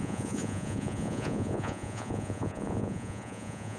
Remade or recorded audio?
remade